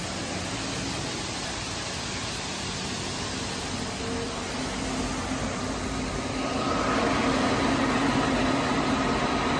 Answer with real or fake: real